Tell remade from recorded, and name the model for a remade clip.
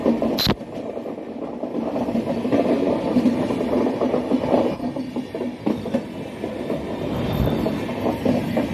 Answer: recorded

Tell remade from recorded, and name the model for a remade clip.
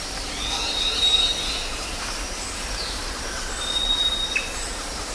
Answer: recorded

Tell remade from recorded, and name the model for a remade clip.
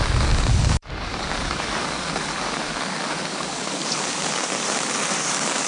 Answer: remade, codec, DAC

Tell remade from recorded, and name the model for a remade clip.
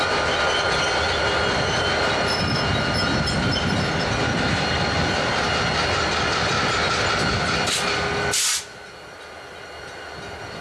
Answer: recorded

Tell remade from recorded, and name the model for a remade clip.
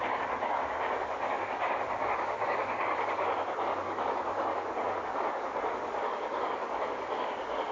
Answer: remade, codec, DAC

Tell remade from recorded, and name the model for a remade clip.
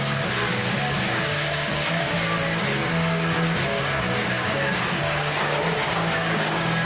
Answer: remade, codec, DAC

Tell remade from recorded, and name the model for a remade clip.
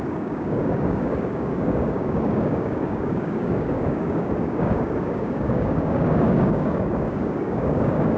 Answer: remade, codec, DAC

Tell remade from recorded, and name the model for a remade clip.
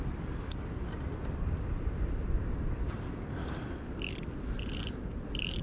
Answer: recorded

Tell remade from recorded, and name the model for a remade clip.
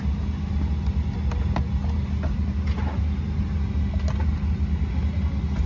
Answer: recorded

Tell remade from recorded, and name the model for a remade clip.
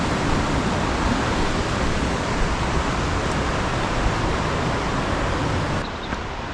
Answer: recorded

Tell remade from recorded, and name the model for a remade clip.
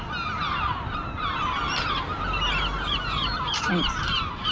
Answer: recorded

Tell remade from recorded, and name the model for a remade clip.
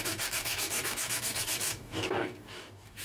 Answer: remade, codec, DAC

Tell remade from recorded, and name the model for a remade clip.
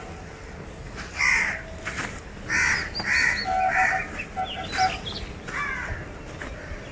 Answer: recorded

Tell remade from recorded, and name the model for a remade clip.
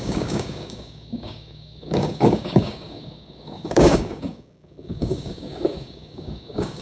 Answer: remade, codec, DAC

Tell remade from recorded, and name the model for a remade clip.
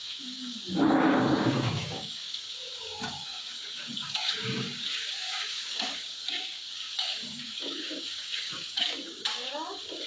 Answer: remade, codec, DAC